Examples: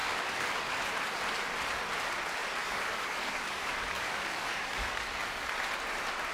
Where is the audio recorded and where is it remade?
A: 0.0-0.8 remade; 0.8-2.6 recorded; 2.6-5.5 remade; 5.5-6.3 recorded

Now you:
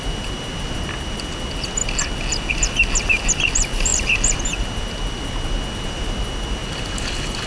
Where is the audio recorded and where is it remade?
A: 0.0-7.5 recorded

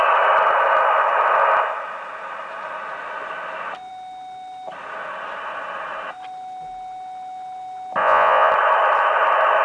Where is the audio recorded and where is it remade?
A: 0.0-8.0 recorded; 8.0-8.5 remade; 8.5-9.6 recorded